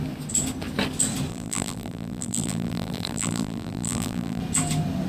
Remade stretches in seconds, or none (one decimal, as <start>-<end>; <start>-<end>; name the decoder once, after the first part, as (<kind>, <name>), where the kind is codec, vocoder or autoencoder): 1.3-4.4 (vocoder, BigVGAN v2)